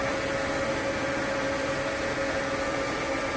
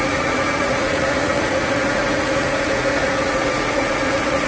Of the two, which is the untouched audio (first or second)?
first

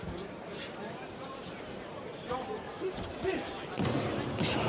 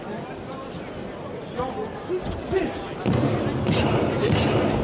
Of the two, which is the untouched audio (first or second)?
second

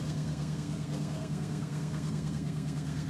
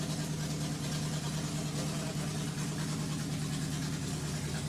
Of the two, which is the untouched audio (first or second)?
second